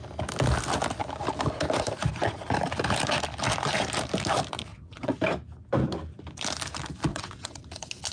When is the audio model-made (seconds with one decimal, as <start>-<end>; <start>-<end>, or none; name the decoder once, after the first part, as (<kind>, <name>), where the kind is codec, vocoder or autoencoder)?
4.7-5.2 (vocoder, WaveNeXt); 7.1-7.6